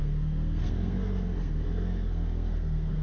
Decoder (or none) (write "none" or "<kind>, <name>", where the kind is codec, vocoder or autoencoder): codec, SNAC